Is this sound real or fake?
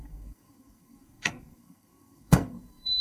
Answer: fake